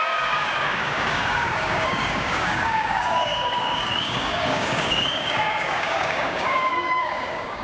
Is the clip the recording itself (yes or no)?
no